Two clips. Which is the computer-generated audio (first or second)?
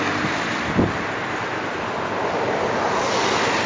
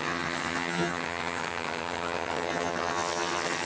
second